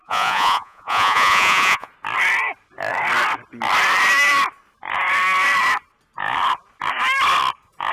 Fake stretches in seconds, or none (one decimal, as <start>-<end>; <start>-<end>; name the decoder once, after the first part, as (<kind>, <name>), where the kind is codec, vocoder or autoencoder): 0.0-1.9 (vocoder, Vocos)